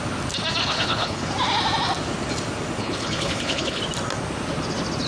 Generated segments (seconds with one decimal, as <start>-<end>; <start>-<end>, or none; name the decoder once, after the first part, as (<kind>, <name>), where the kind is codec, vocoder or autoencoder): 0.6-1.3 (codec, HILCodec); 2.8-3.8